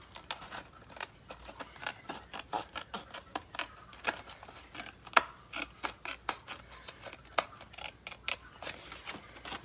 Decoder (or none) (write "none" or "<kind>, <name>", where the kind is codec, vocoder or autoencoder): none